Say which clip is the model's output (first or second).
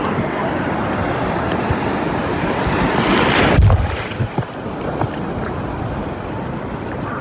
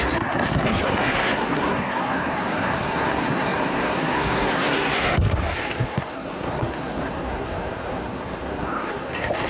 second